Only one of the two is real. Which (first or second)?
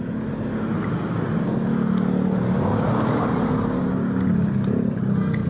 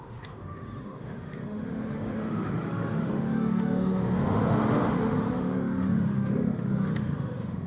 first